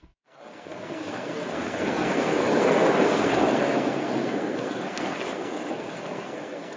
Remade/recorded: remade